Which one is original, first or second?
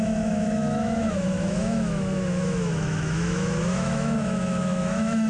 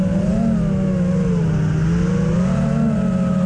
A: second